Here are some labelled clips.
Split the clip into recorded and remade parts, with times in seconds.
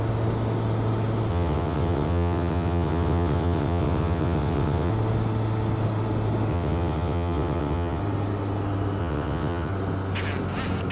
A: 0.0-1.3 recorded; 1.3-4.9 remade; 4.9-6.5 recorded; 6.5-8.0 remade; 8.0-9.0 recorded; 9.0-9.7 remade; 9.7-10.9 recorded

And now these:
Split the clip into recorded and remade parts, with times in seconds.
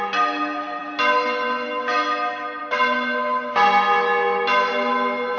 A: 0.0-5.4 recorded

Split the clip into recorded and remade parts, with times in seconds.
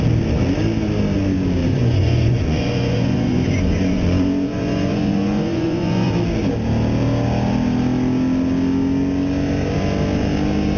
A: 0.0-1.6 recorded; 1.6-6.1 remade; 6.1-10.8 recorded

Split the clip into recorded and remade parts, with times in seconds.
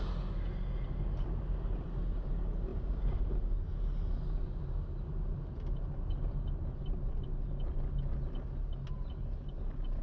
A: 0.0-10.0 recorded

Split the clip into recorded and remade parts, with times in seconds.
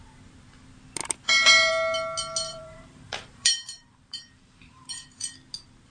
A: 0.0-2.5 recorded; 2.5-5.3 remade; 5.3-5.9 recorded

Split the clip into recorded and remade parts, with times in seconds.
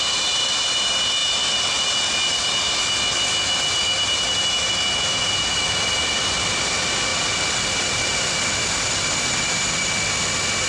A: 0.0-10.7 recorded